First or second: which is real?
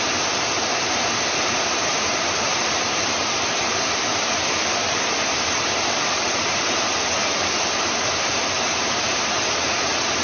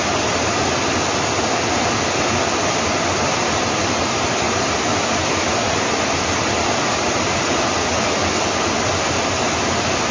second